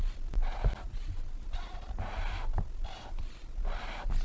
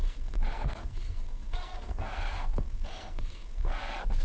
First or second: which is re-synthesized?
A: second